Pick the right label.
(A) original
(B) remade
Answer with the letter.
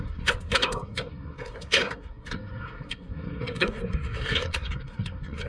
B